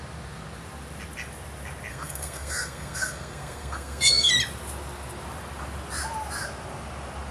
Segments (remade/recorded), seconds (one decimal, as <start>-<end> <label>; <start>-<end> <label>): 0.0-1.9 recorded; 1.9-4.3 remade; 4.3-7.3 recorded